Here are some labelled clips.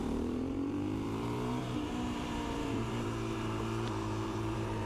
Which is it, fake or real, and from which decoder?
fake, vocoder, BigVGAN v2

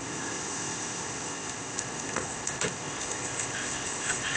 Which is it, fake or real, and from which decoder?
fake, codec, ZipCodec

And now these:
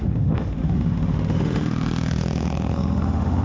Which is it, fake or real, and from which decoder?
fake, autoencoder, DAC-VAE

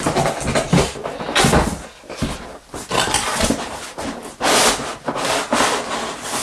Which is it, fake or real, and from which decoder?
real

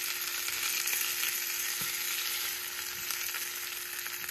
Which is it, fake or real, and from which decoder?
real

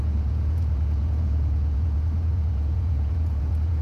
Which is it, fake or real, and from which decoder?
fake, vocoder, Vocos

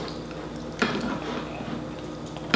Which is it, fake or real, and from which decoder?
real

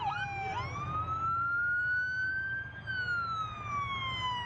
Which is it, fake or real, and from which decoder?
real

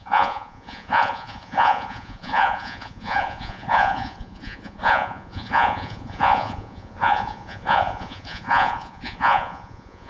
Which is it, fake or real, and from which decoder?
fake, vocoder, Vocos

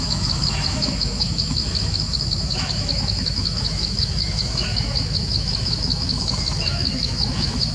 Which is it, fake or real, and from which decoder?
fake, autoencoder, DAC-VAE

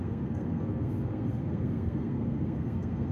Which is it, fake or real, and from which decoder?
fake, codec, SNAC